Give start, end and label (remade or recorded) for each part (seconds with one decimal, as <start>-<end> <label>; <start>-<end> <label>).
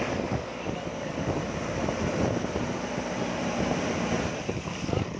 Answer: 0.0-1.4 remade; 1.4-4.5 recorded; 4.5-5.2 remade